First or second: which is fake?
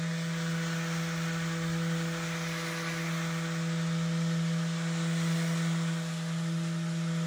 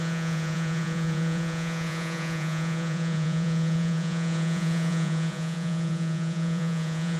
second